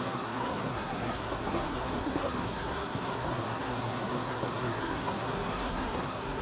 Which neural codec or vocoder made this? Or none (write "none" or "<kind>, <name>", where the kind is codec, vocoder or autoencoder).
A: codec, SNAC